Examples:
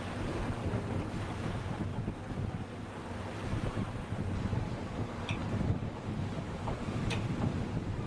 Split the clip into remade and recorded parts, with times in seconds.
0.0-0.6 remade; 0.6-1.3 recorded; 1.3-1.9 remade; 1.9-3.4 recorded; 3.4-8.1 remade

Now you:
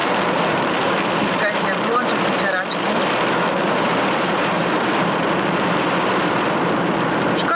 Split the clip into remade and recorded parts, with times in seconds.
0.0-2.1 remade; 2.1-4.6 recorded; 4.6-5.8 remade; 5.8-7.5 recorded